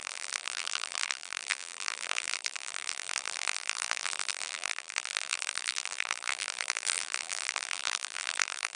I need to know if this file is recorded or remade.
remade